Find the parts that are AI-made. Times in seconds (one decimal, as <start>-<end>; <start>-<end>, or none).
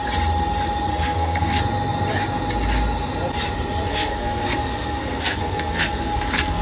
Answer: 0.9-1.6; 3.9-6.6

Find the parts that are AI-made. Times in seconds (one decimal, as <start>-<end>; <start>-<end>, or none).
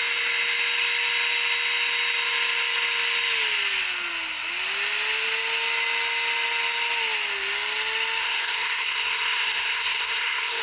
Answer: 8.2-10.6